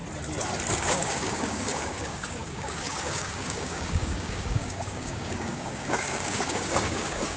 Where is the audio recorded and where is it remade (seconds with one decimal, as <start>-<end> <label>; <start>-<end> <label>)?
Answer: 0.0-0.7 recorded; 0.7-7.4 remade